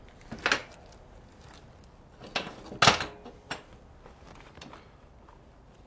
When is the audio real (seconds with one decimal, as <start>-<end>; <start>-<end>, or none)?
0.0-5.9